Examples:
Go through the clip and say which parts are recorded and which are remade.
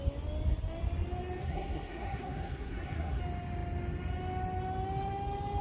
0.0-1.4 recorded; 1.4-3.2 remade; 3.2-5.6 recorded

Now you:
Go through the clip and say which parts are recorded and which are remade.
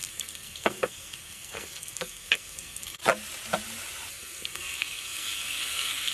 0.0-3.0 remade; 3.0-4.1 recorded; 4.1-6.1 remade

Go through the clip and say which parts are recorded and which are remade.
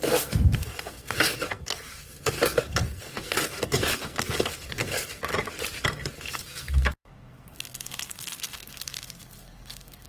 0.0-5.3 remade; 5.3-6.1 recorded; 6.1-10.1 remade